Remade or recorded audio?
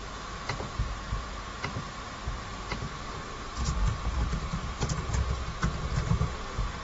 recorded